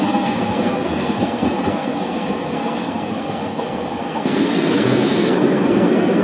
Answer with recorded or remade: remade